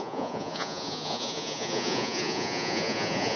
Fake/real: fake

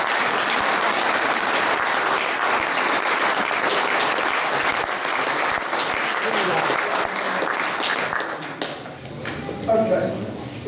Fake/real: real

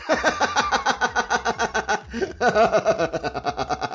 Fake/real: real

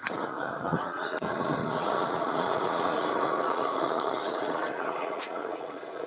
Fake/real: fake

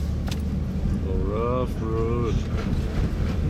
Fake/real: real